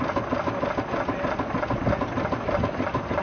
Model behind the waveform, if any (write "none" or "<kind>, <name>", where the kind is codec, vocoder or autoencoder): none